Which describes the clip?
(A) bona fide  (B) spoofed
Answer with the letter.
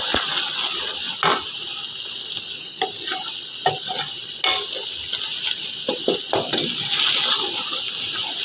A